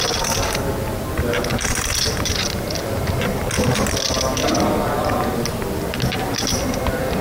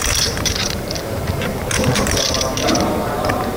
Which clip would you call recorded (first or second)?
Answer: first